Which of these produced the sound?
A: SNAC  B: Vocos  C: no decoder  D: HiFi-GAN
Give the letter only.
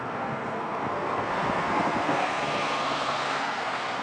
A